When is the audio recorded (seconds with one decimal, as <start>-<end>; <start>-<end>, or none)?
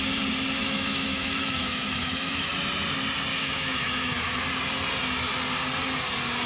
0.0-0.6; 2.5-3.3; 4.5-6.5